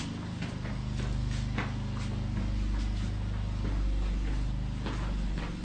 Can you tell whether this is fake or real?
real